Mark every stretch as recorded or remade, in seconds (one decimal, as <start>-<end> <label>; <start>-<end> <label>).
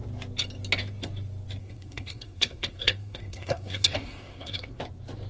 0.0-1.6 recorded; 1.6-4.8 remade; 4.8-5.3 recorded